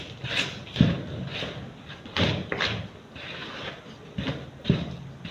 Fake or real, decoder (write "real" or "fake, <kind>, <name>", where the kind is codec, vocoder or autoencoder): real